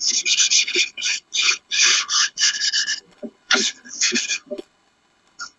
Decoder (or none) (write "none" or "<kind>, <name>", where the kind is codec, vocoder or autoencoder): codec, HILCodec